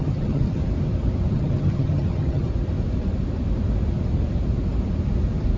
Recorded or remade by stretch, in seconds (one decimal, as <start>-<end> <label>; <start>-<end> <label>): 0.0-0.6 remade; 0.6-1.3 recorded; 1.3-2.5 remade; 2.5-5.6 recorded